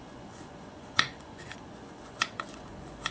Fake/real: fake